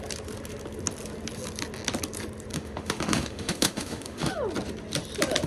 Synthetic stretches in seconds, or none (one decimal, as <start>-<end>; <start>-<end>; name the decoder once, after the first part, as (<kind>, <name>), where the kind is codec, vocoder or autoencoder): 2.5-4.3 (autoencoder, DAC-VAE)